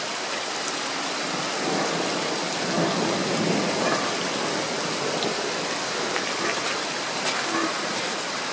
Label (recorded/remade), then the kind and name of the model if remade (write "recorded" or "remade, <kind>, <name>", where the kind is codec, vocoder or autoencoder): recorded